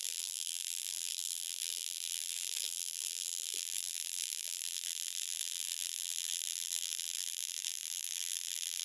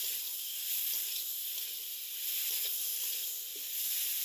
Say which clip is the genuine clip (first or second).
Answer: second